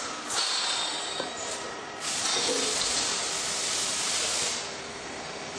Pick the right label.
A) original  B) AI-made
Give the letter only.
B